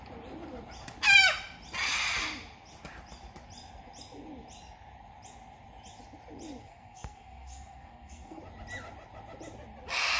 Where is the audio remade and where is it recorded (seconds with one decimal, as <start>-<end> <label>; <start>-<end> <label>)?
0.0-6.6 recorded; 6.6-8.4 remade; 8.4-10.2 recorded